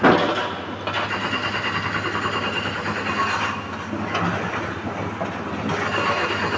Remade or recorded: recorded